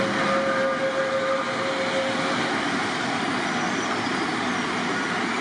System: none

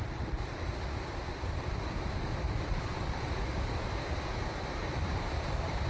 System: vocoder, BigVGAN v2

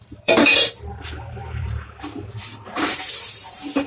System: vocoder, BigVGAN v2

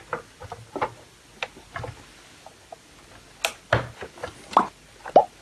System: none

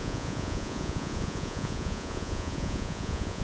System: vocoder, Vocos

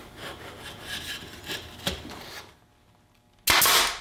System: none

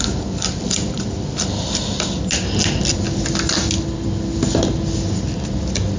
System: none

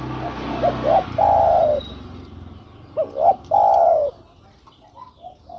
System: none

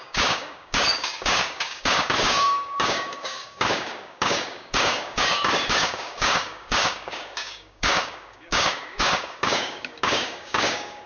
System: codec, DAC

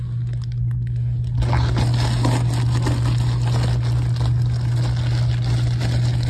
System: none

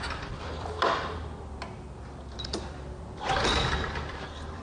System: vocoder, BigVGAN v2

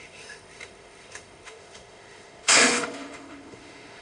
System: autoencoder, DAC-VAE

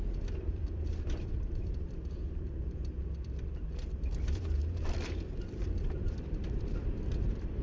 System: vocoder, BigVGAN v2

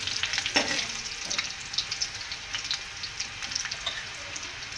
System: none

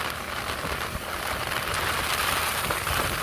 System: none